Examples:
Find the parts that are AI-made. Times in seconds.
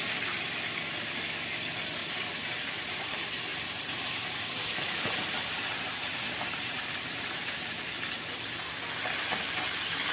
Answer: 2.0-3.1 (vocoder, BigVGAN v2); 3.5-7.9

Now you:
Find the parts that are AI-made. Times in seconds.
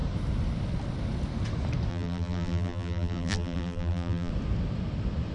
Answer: 1.9-4.3 (vocoder, BigVGAN v2)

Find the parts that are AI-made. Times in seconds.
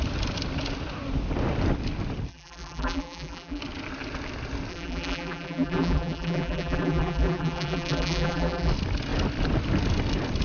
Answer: 2.3-3.6 (vocoder, BigVGAN v2); 4.7-8.7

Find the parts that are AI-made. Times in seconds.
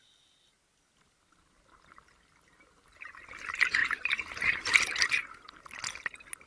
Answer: none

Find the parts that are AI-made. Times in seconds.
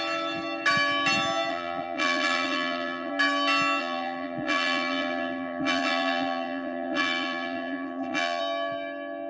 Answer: 1.5-3.1 (vocoder, BigVGAN v2); 3.8-8.4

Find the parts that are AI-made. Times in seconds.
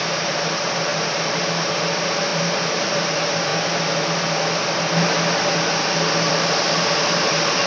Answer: 0.0-3.5 (vocoder, BigVGAN v2); 6.3-7.7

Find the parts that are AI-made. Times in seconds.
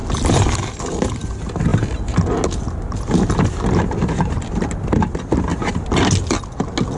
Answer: none